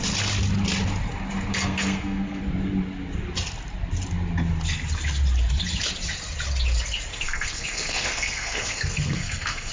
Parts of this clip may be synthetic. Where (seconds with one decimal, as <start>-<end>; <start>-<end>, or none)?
1.5-2.4; 7.1-9.7